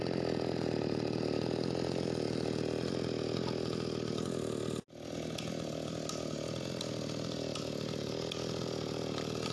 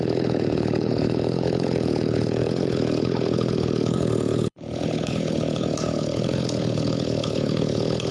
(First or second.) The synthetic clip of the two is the second